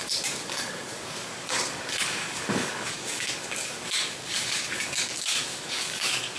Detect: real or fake fake